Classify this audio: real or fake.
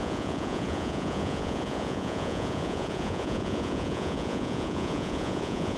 fake